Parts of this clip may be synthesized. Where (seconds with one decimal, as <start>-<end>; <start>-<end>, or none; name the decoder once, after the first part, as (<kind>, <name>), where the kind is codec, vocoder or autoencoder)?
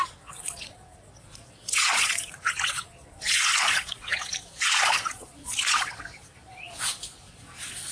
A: 0.0-7.9 (vocoder, Vocos)